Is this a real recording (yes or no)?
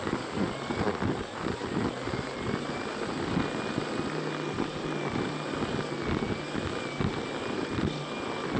yes